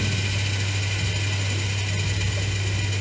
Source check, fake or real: real